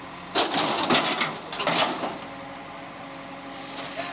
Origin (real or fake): real